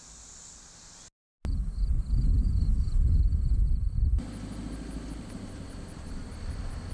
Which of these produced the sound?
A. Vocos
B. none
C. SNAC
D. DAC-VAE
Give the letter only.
B